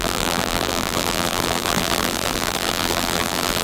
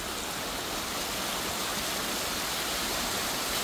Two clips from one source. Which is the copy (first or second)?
first